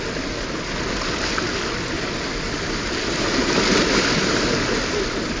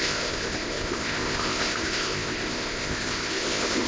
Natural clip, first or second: first